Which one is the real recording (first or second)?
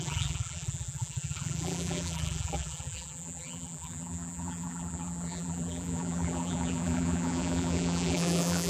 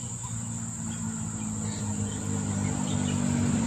second